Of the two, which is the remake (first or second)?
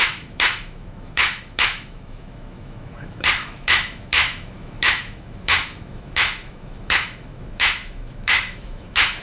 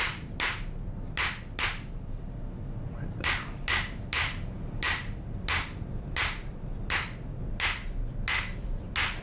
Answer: first